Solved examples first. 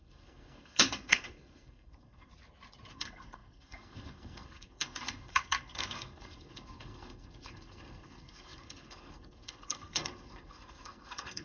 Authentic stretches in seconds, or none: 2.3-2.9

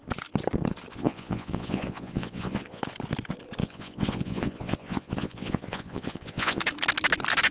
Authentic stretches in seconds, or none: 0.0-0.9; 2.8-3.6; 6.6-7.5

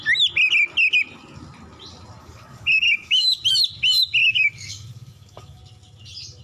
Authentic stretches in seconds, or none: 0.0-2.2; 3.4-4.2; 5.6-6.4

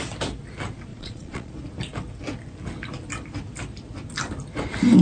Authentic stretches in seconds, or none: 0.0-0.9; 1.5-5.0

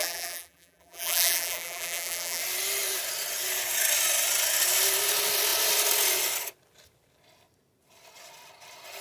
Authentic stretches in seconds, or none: 2.4-9.0

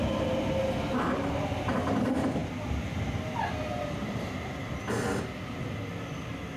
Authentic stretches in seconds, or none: 0.0-6.6